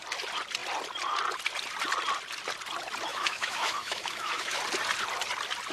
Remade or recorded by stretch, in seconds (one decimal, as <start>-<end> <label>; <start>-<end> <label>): 0.0-3.1 recorded; 3.1-4.6 remade; 4.6-5.7 recorded